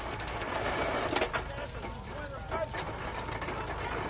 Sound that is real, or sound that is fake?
real